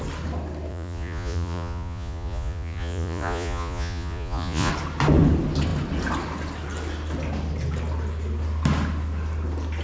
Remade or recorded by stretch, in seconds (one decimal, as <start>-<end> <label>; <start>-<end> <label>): 0.0-0.7 recorded; 0.7-4.7 remade; 4.7-9.8 recorded